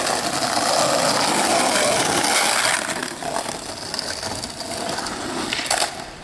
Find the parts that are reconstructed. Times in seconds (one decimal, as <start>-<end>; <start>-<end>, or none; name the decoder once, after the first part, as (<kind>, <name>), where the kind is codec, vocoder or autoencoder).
none